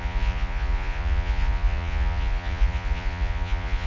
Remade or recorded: remade